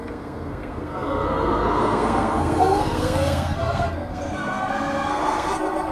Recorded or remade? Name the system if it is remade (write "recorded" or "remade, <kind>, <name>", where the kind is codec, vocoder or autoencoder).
remade, codec, SNAC